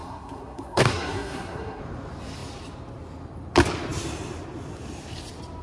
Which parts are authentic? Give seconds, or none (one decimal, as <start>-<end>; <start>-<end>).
1.8-5.6